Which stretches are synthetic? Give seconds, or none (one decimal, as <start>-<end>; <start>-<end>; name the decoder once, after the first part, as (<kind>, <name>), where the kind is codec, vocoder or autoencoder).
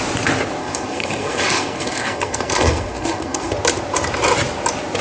0.6-3.5 (codec, SNAC)